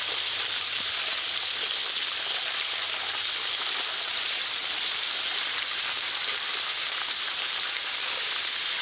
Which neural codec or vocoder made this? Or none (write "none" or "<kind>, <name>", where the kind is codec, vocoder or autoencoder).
vocoder, BigVGAN v2